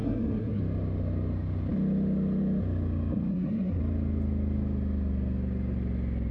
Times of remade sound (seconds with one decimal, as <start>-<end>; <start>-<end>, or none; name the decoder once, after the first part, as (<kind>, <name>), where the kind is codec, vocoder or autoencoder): 0.0-0.6 (codec, SNAC); 3.3-3.8

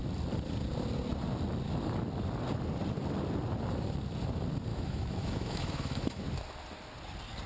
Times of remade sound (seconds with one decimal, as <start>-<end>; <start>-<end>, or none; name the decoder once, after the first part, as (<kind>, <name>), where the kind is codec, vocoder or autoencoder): 4.7-6.2 (autoencoder, DAC-VAE)

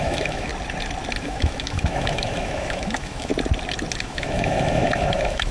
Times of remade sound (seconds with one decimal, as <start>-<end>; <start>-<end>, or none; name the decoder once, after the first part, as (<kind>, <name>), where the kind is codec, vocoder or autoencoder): 0.0-0.5 (autoencoder, DAC-VAE); 1.2-3.3; 4.0-5.5

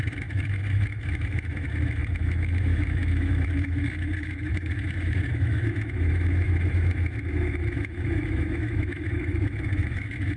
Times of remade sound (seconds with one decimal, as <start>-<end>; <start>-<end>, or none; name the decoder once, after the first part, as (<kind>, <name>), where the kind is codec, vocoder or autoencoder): 0.0-10.4 (autoencoder, DAC-VAE)

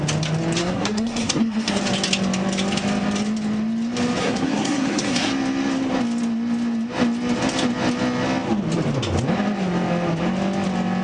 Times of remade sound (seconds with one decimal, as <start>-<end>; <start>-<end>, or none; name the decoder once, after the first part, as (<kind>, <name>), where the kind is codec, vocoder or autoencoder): 0.6-1.8 (codec, SNAC); 4.2-5.3